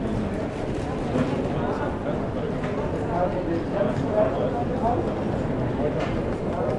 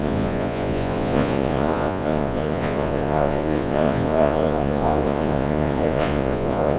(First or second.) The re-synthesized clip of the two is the second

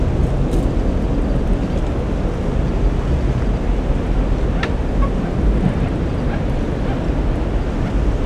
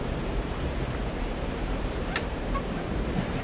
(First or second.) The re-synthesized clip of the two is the second